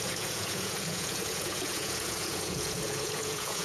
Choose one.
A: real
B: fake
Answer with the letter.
B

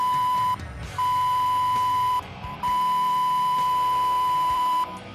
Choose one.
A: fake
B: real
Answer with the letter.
A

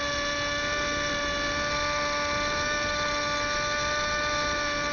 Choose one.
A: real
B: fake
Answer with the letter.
A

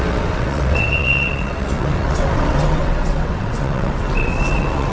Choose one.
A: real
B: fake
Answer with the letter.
B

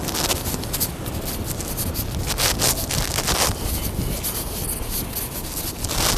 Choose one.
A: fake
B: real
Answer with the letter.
B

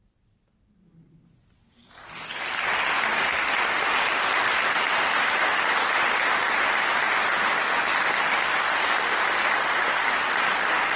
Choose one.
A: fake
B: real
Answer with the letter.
B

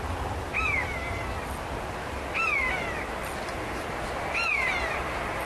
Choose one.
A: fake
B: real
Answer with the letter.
B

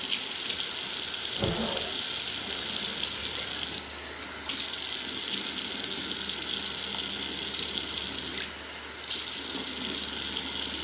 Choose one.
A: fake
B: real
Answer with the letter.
B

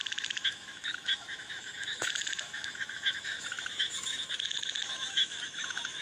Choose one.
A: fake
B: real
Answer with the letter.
A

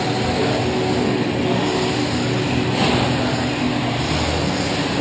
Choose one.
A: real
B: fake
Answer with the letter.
A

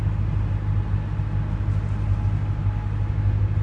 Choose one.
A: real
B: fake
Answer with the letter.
A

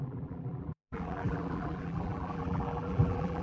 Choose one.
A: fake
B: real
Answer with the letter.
A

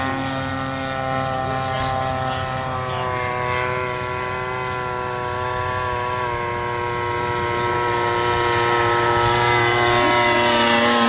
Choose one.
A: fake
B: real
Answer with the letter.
B